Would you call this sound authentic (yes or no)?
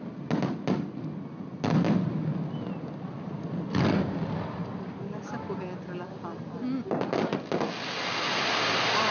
yes